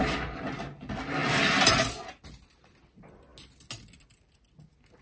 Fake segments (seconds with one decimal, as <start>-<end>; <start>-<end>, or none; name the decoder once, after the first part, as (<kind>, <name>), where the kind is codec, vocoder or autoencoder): none